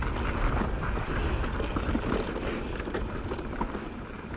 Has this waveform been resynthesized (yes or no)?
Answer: no